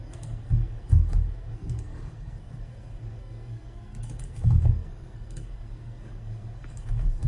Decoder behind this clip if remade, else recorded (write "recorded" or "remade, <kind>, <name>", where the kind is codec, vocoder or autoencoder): remade, codec, SNAC